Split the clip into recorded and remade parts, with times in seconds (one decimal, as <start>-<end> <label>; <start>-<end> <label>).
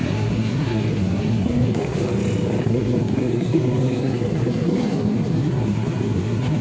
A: 0.0-2.1 remade; 2.1-2.6 recorded; 2.6-6.6 remade